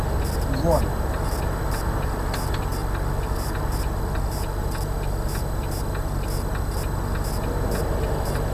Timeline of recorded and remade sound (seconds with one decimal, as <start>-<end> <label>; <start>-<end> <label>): 0.0-2.7 recorded; 2.7-4.6 remade; 4.6-8.5 recorded